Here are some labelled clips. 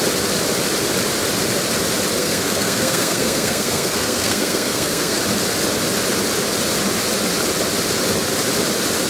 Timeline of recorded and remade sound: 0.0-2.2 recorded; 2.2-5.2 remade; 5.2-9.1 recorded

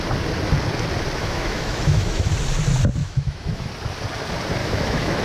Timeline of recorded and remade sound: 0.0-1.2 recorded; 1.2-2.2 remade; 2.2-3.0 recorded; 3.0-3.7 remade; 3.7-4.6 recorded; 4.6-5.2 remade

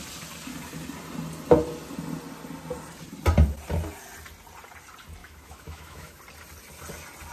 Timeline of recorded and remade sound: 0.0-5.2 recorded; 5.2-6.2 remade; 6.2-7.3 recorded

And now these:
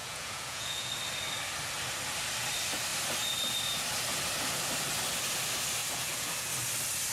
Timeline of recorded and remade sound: 0.0-0.9 remade; 0.9-5.8 recorded; 5.8-6.5 remade; 6.5-7.1 recorded

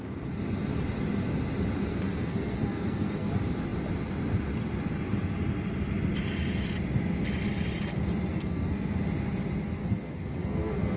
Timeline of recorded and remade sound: 0.0-1.9 recorded; 1.9-3.3 remade; 3.3-8.3 recorded; 8.3-9.0 remade; 9.0-9.8 recorded; 9.8-11.0 remade

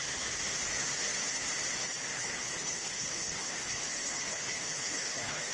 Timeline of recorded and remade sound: 0.0-2.1 recorded; 2.1-5.5 remade

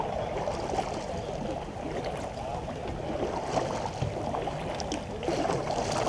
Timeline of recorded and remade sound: 0.0-6.1 recorded